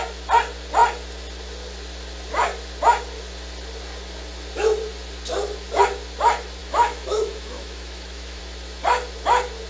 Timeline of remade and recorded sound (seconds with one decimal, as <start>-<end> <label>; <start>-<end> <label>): 0.0-6.6 recorded; 6.6-8.4 remade; 8.4-9.7 recorded